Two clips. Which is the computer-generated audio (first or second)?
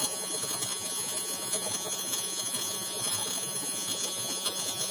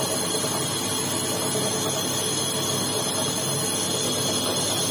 first